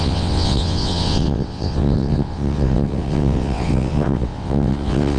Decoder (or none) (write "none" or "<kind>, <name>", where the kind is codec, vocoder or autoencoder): vocoder, WaveNeXt